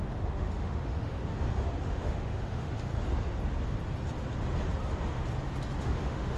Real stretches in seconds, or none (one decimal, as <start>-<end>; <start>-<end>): 1.2-1.8; 2.9-5.8